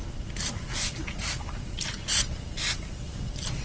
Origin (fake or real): real